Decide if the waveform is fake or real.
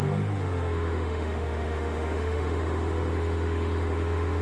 fake